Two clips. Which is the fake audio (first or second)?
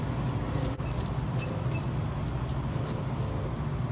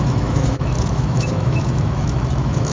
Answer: second